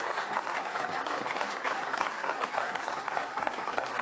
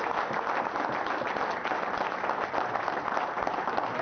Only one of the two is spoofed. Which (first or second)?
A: first